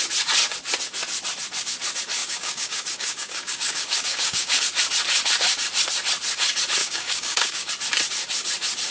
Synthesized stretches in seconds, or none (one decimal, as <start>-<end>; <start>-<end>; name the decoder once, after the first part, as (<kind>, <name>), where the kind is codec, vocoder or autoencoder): 2.2-4.6 (codec, DAC); 6.8-7.7